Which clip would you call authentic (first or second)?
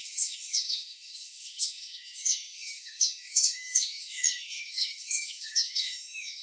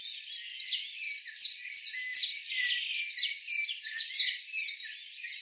second